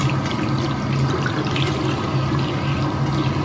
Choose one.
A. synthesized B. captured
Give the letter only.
B